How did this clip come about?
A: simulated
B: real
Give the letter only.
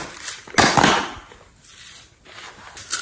B